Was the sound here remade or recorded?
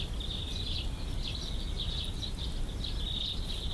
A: recorded